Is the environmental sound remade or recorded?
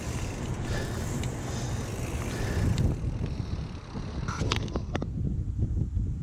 recorded